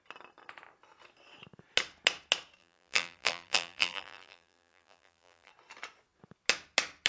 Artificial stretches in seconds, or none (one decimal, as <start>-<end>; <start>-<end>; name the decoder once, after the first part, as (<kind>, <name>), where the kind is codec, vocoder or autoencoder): 2.6-5.5 (vocoder, BigVGAN v2)